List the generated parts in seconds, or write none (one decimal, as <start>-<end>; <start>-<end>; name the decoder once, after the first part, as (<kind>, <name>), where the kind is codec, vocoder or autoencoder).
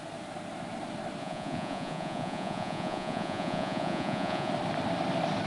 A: 1.2-4.5 (vocoder, Vocos)